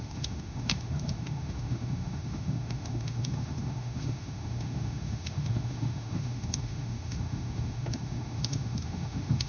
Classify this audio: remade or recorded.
remade